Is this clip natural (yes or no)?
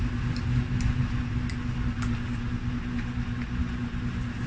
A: yes